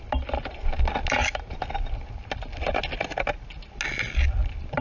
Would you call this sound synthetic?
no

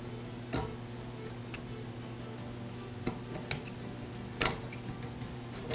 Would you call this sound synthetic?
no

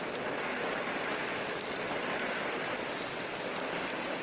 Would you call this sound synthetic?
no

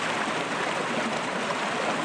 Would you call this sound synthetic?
no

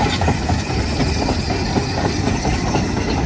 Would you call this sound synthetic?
no